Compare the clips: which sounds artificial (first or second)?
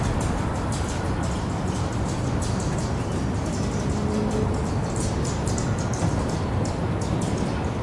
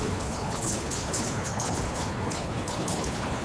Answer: second